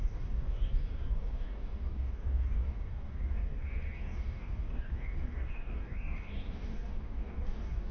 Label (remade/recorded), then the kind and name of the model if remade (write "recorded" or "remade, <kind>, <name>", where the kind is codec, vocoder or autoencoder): remade, codec, DAC